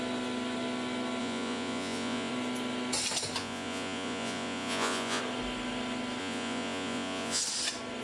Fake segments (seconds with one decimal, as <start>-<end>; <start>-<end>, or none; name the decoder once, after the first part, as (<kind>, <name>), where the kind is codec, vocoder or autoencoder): 1.2-2.3 (vocoder, Vocos); 3.4-5.2; 6.2-7.4

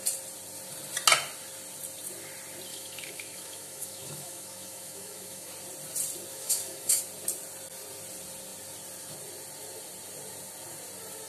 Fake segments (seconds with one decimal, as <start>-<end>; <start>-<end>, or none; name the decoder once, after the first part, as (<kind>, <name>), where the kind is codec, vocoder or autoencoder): 2.7-5.5 (autoencoder, DAC-VAE); 6.3-7.0

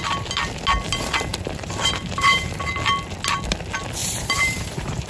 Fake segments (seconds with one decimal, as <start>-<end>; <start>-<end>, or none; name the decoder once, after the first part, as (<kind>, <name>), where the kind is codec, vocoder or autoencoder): 1.3-2.6 (vocoder, BigVGAN v2); 4.0-5.1

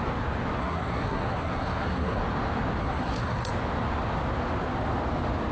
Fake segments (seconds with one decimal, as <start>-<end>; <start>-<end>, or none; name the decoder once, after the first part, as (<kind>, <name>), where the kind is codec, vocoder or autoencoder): 0.6-2.2 (codec, SNAC); 2.8-3.5

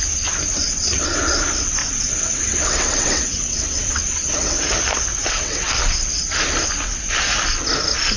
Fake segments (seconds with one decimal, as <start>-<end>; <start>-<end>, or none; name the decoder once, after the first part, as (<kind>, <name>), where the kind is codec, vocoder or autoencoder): 0.6-1.2 (vocoder, WaveNeXt); 1.8-4.6; 5.1-5.7